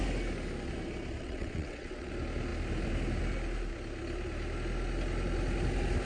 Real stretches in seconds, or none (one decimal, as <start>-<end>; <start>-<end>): 0.0-1.2; 2.1-6.1